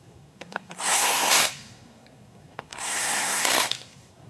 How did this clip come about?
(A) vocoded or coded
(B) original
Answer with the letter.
A